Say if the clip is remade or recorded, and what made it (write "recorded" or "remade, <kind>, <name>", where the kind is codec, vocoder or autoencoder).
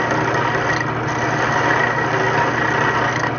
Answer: recorded